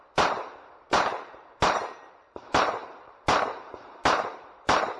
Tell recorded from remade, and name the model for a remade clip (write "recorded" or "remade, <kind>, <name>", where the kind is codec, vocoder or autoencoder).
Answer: remade, vocoder, BigVGAN v2